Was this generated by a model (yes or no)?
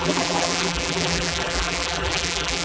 yes